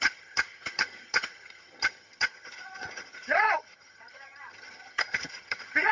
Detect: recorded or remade remade